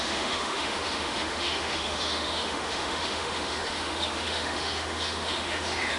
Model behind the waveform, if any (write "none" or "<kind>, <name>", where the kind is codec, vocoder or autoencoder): autoencoder, DAC-VAE